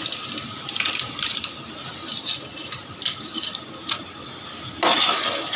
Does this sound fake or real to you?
fake